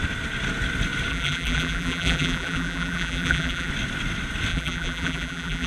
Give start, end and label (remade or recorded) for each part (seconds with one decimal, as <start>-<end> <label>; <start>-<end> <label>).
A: 0.0-1.1 recorded; 1.1-3.7 remade; 3.7-4.5 recorded; 4.5-5.7 remade